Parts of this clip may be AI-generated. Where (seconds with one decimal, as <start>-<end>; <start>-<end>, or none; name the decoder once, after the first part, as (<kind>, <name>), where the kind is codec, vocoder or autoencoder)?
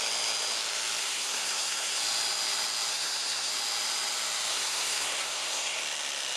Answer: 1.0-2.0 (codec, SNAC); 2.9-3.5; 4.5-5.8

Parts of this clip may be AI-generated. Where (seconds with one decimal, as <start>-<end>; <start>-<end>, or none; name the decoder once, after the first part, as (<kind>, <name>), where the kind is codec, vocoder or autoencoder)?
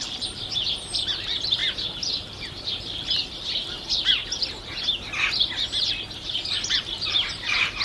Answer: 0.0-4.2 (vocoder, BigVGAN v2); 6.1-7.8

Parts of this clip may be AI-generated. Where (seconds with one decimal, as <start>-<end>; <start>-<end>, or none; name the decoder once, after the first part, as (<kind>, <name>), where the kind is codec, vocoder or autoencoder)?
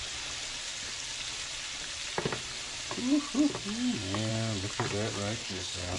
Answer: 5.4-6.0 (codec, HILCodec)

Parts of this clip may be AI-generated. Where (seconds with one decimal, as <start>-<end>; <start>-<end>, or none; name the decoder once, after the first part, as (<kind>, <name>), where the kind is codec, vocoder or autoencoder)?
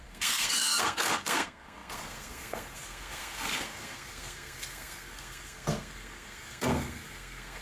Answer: 0.0-7.6 (codec, SNAC)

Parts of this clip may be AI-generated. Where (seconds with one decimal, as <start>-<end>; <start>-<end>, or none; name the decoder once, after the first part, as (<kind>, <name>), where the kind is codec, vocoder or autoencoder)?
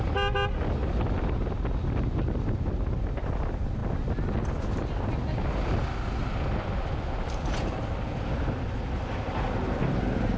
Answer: none